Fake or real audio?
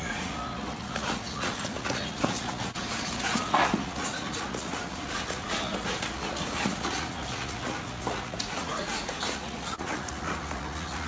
fake